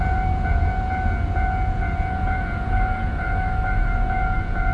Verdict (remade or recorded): remade